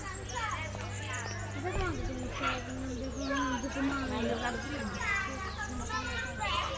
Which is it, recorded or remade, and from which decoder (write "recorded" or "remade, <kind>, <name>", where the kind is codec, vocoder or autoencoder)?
recorded